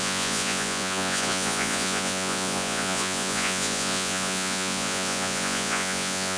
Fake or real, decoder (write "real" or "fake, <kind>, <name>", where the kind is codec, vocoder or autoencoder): fake, vocoder, Vocos